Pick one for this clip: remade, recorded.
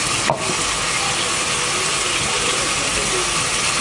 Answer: recorded